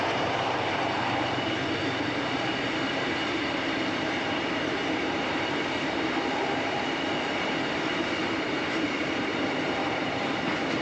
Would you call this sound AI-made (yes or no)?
yes